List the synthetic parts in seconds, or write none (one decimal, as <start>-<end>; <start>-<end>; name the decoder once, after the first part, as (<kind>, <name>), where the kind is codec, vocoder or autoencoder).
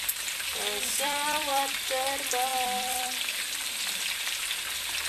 0.5-1.7 (vocoder, BigVGAN v2); 2.5-4.6